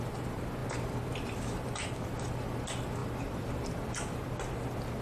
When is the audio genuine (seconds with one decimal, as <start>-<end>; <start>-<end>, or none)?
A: 0.0-0.6; 2.4-3.0; 4.3-5.0

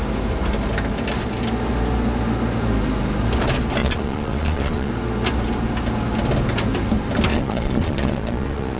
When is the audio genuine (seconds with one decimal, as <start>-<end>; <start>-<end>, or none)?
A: 0.0-3.8; 4.9-7.3